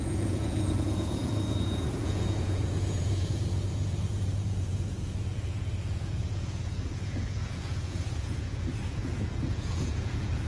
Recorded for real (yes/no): no